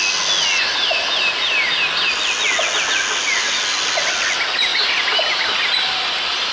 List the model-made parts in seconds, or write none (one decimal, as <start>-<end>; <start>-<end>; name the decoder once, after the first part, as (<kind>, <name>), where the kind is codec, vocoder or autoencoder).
none